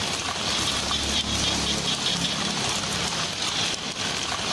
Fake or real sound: real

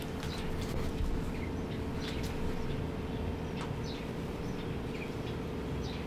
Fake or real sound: real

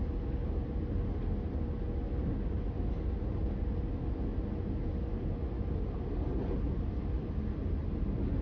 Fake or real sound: real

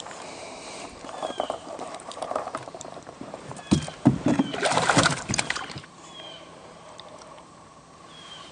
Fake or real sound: fake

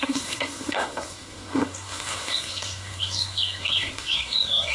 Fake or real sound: fake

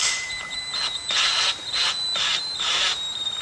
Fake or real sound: fake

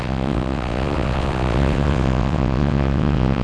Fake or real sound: fake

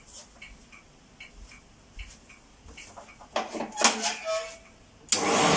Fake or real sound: real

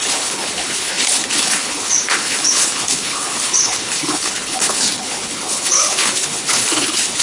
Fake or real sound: fake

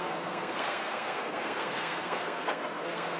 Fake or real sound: fake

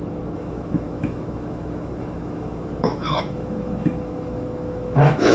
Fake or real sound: fake